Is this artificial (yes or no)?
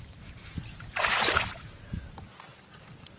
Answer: no